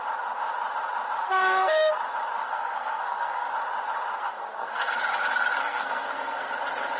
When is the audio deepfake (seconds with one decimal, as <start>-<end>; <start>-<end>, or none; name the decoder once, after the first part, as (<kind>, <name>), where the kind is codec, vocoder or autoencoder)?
1.2-1.9 (codec, SNAC); 2.4-3.5; 4.1-5.0; 5.6-6.5